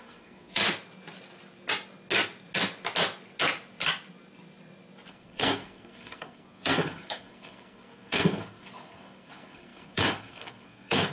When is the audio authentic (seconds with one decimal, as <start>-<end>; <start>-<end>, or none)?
0.6-5.1